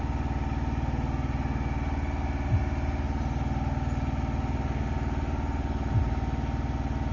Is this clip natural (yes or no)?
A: yes